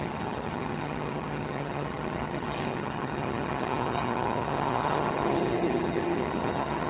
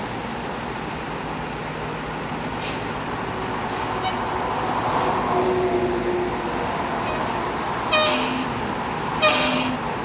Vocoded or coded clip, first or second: first